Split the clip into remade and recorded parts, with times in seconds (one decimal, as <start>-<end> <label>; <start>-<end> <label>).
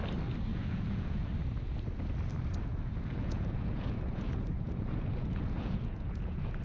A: 0.0-0.5 recorded; 0.5-1.3 remade; 1.3-2.6 recorded; 2.6-6.6 remade